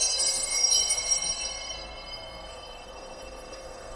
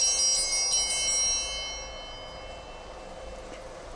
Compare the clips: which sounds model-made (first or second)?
first